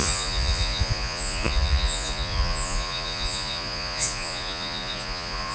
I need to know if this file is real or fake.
fake